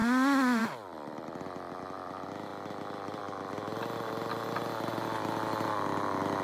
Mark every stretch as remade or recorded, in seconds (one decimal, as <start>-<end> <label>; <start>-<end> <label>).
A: 0.0-6.4 recorded